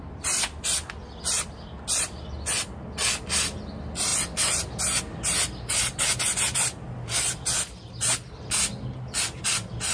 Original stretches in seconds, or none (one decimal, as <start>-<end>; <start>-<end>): 0.0-9.9